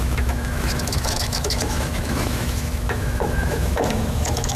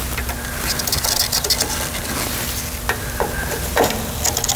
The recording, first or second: second